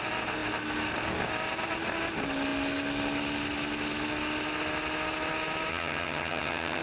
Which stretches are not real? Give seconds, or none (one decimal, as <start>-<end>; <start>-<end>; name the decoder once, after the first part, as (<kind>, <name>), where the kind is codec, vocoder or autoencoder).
5.7-6.8 (vocoder, HiFi-GAN)